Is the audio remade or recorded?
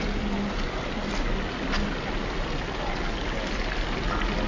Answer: recorded